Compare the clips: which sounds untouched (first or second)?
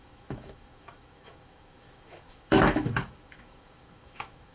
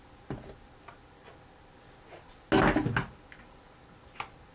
second